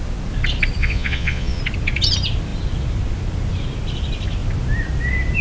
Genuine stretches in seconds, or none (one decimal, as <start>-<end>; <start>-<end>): 0.0-0.8; 1.6-5.4

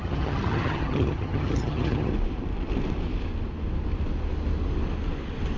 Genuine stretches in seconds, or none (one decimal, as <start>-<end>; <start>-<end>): 2.1-5.6

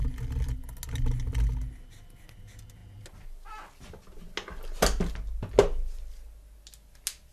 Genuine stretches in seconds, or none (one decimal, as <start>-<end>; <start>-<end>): 0.0-7.3